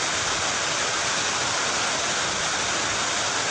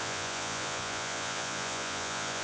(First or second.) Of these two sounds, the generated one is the second